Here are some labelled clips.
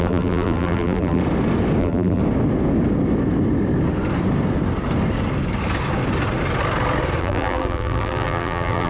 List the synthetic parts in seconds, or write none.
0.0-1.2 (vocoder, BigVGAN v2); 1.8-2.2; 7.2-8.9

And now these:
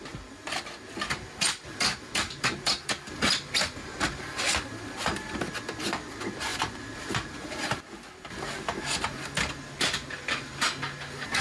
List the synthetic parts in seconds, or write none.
none

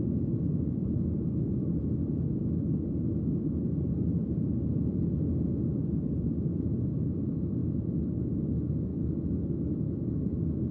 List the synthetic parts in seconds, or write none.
none

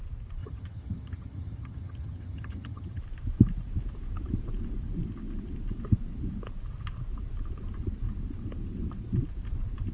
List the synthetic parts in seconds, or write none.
0.4-3.0 (vocoder, HiFi-GAN)

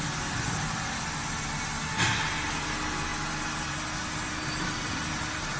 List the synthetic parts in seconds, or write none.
none

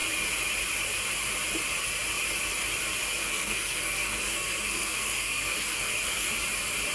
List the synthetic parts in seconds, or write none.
3.2-6.3 (codec, SNAC)

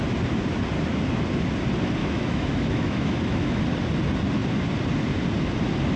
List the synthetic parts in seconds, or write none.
2.0-3.6 (autoencoder, DAC-VAE)

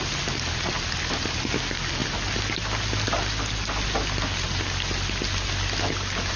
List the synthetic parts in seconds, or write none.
none